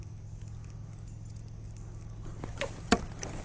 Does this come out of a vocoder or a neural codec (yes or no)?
no